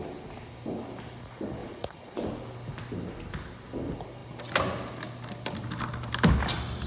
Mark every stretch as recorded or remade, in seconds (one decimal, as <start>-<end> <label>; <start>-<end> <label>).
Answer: 0.0-1.6 recorded; 1.6-2.3 remade; 2.3-6.9 recorded